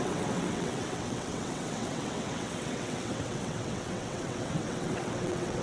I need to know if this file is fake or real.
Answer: fake